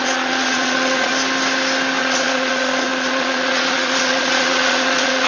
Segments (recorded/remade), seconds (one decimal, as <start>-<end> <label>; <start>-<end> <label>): 0.0-1.1 remade; 1.1-2.0 recorded; 2.0-5.3 remade